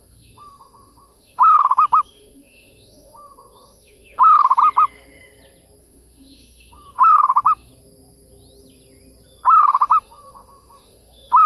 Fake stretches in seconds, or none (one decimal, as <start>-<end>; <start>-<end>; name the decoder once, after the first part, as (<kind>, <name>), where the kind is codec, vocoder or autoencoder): 0.0-4.6 (autoencoder, DAC-VAE); 5.8-7.7; 9.6-11.5